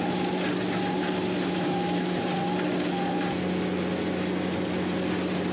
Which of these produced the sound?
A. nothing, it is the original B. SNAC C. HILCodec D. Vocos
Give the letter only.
A